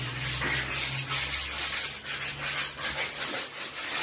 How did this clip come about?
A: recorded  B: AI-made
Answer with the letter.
A